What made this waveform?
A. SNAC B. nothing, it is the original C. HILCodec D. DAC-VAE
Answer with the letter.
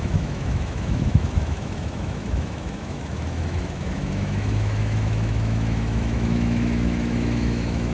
D